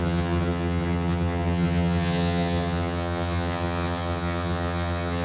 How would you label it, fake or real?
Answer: fake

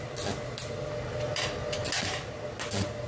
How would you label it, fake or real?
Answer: real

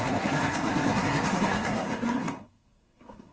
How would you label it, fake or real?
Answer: fake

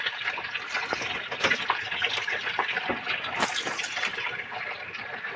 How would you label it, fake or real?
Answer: real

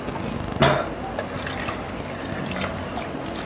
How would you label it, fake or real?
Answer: real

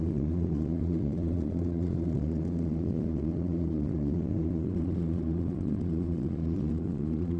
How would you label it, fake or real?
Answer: fake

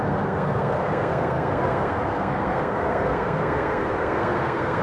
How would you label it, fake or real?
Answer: fake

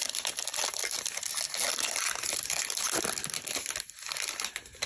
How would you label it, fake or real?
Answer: real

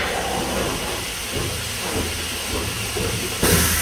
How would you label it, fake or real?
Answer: real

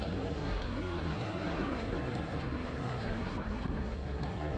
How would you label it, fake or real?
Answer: fake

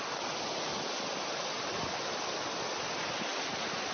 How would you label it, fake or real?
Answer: real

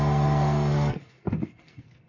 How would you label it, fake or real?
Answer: fake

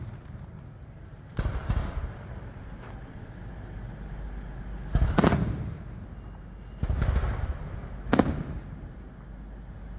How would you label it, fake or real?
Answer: real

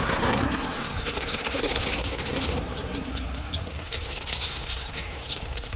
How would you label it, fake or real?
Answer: fake